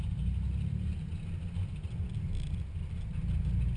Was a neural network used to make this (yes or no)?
no